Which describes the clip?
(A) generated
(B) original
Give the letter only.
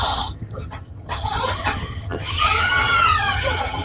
A